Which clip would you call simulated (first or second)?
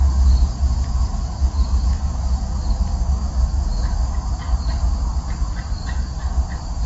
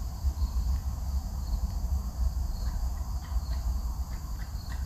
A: second